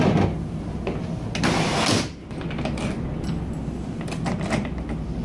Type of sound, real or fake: real